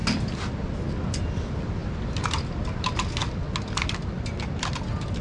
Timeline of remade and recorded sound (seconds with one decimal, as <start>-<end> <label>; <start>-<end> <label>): 0.0-5.2 recorded